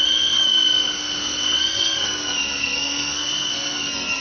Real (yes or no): no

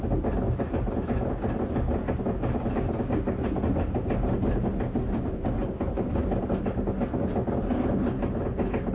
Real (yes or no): yes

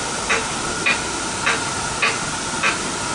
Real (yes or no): yes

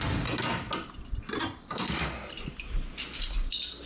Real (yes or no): yes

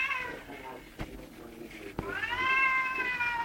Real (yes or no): yes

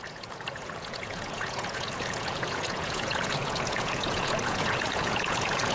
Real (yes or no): no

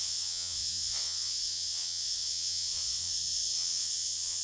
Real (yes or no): no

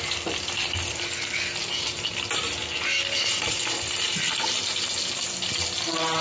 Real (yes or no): yes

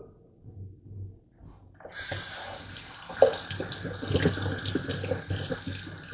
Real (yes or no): yes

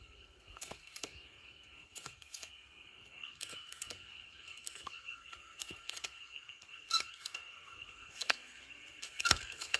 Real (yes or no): no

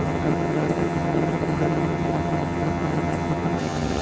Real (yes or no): no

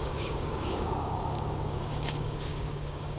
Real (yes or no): no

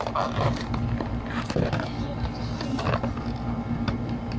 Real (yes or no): yes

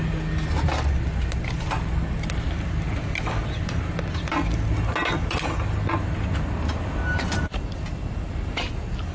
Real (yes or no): yes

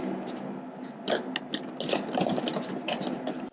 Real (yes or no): yes